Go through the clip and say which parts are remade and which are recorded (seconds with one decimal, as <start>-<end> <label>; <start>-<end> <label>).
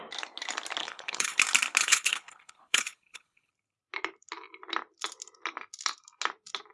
0.0-0.8 recorded; 0.8-1.4 remade; 1.4-1.8 recorded; 1.8-3.5 remade; 3.5-6.7 recorded